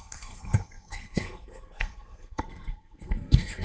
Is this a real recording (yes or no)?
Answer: no